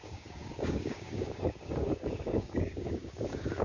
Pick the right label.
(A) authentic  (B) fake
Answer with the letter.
B